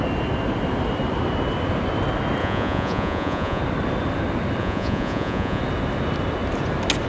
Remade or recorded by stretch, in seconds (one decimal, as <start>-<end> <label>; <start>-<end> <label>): 0.0-2.4 recorded; 2.4-3.6 remade; 3.6-4.6 recorded; 4.6-5.6 remade; 5.6-7.1 recorded